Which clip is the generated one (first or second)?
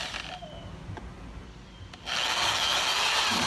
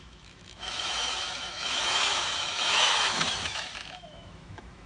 second